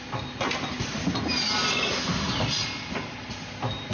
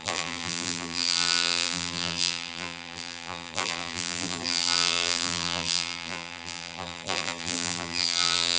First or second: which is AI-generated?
second